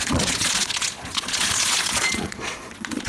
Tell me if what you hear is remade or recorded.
remade